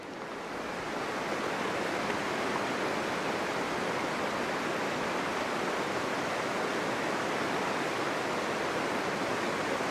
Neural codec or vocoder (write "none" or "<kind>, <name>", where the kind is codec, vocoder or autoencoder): none